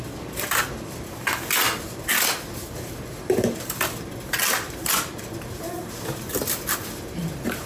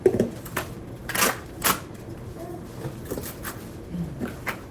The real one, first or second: second